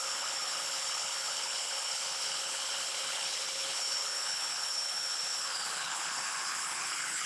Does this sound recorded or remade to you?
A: remade